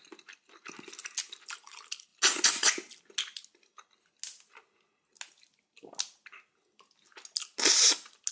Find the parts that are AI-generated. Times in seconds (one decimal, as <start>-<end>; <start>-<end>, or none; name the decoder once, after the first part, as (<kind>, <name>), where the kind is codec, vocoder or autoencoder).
none